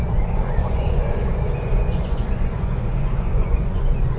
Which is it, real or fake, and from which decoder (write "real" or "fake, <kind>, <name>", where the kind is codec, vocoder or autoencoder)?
fake, vocoder, Vocos